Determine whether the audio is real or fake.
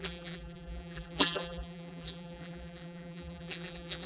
fake